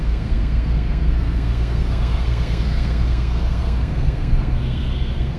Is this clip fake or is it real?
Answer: fake